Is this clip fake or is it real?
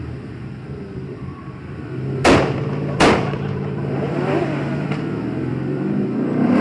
fake